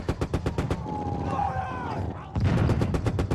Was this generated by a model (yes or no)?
no